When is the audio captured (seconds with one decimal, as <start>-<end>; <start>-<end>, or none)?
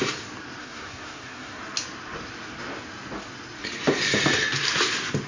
0.0-0.6; 1.6-5.3